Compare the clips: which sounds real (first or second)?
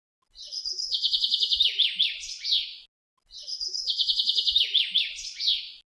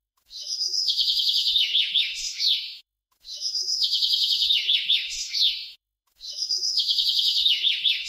first